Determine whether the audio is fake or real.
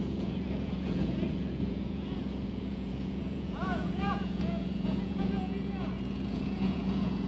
fake